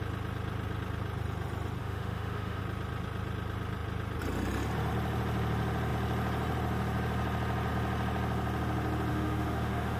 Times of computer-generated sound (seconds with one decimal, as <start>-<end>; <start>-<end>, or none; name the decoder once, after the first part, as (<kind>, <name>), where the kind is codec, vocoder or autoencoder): 1.8-2.6 (autoencoder, DAC-VAE); 9.1-10.0